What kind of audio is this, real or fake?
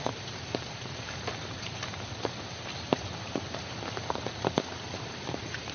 fake